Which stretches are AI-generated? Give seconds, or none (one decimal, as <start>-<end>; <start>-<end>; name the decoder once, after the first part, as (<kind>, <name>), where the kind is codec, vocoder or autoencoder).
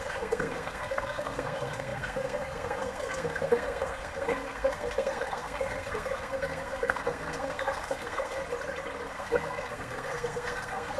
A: 0.0-8.4 (codec, SNAC); 9.1-11.0